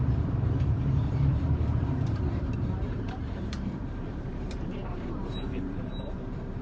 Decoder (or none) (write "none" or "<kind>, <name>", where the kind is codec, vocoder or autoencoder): vocoder, BigVGAN v2